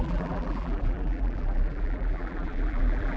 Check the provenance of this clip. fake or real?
fake